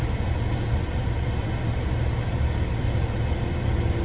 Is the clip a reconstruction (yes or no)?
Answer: no